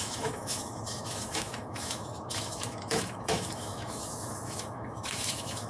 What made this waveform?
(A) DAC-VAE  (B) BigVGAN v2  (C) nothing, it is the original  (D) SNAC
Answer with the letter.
A